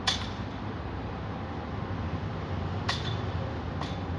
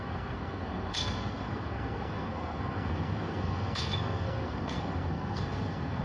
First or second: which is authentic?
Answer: first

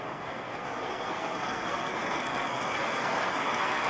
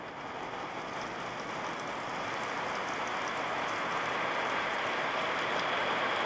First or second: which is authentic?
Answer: second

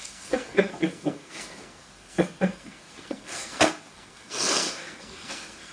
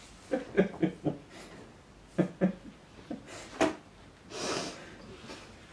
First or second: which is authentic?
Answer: second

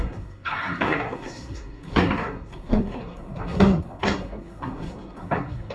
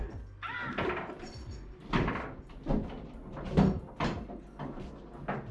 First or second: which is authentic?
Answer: second